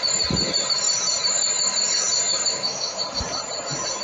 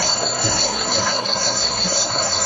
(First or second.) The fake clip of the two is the second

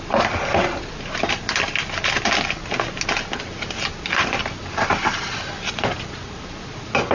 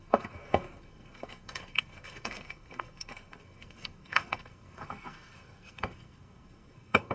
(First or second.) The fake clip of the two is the second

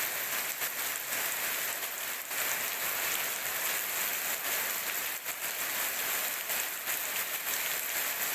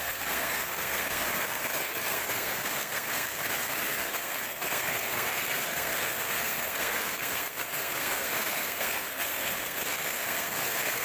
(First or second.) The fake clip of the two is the second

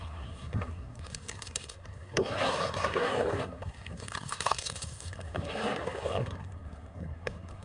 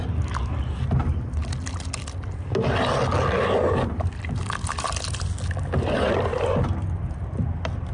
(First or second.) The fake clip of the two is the first